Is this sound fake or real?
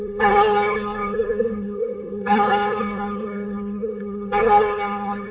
fake